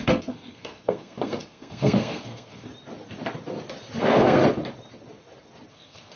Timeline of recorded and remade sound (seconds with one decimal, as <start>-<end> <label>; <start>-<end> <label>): 0.0-2.7 remade; 2.7-4.0 recorded; 4.0-4.4 remade; 4.4-5.7 recorded; 5.7-6.2 remade